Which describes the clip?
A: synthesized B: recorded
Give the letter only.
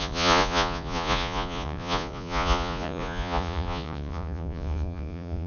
A